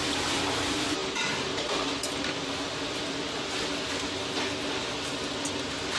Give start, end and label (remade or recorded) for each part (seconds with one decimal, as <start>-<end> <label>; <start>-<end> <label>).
0.0-6.0 recorded